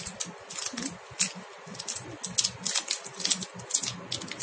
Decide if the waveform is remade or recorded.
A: recorded